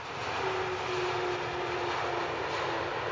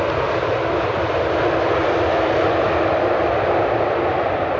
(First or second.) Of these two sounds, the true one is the first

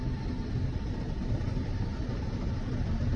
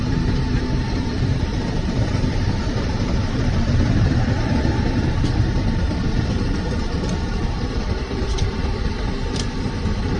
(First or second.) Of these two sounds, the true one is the first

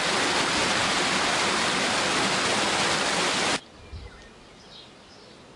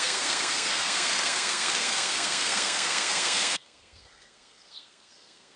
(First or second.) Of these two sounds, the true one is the first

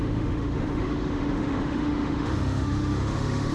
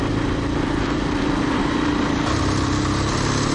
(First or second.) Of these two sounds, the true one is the second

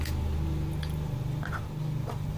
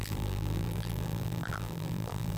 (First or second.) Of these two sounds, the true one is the first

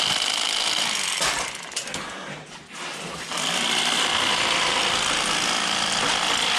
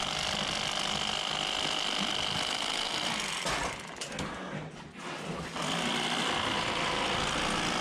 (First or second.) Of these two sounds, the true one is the second